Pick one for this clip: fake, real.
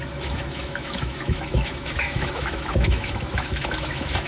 fake